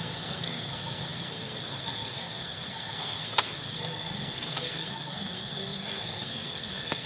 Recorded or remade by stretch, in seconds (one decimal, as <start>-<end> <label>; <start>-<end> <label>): 0.0-7.1 remade